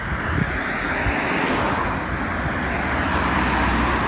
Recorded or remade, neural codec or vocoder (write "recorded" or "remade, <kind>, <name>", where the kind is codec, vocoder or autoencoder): recorded